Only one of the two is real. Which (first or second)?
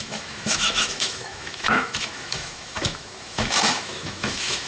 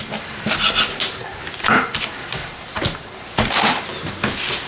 second